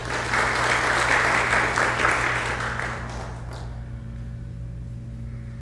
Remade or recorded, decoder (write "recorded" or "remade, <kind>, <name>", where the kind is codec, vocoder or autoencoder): recorded